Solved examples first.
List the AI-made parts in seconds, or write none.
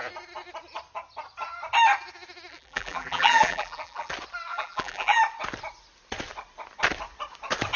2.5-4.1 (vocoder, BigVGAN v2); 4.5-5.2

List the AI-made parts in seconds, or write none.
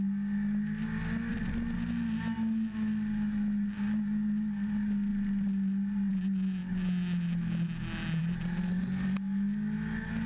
none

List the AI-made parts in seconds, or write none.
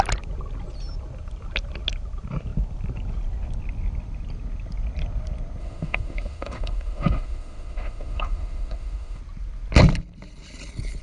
5.6-9.2 (autoencoder, DAC-VAE)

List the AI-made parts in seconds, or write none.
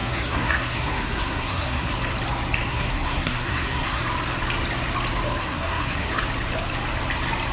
0.0-1.9 (codec, SNAC); 2.7-4.0; 5.4-6.1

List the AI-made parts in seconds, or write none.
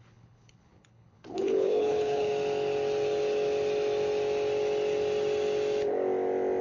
0.0-2.3 (codec, HILCodec)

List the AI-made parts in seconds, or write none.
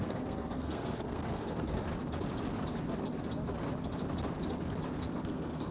0.0-1.9 (codec, SNAC); 5.1-5.7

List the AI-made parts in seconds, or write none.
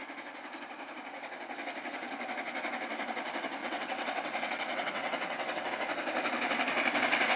3.6-5.7 (vocoder, WaveNeXt)